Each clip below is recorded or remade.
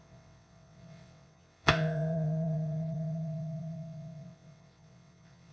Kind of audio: remade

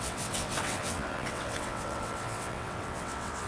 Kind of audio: remade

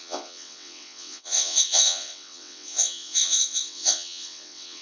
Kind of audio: remade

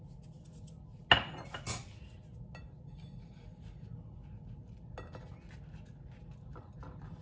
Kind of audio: recorded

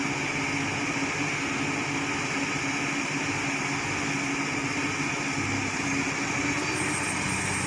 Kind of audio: recorded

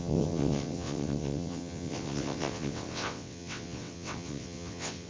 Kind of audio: remade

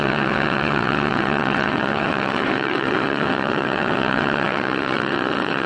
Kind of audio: remade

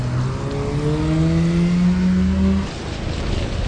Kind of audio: recorded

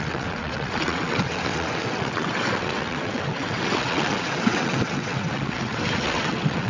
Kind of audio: remade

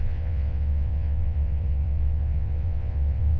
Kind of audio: remade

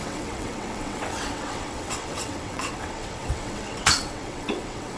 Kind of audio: remade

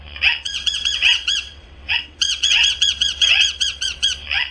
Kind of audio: remade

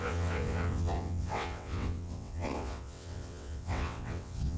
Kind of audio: remade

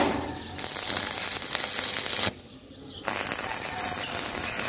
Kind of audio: recorded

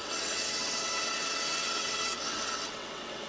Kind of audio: remade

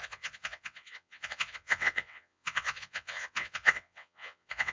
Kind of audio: remade